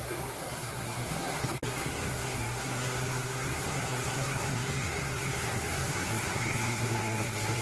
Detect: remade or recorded remade